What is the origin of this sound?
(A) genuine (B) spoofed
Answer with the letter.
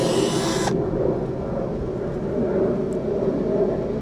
A